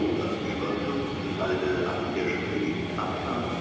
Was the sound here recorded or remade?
recorded